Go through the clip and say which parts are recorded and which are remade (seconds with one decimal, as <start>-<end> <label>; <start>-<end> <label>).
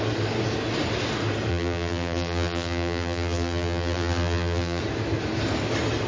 0.0-1.5 recorded; 1.5-4.8 remade; 4.8-6.1 recorded